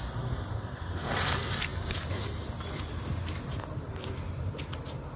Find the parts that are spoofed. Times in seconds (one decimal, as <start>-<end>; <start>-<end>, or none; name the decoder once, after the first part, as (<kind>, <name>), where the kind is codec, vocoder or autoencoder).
0.5-1.1 (codec, SNAC)